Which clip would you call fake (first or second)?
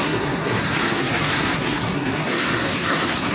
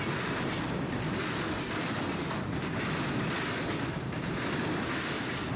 first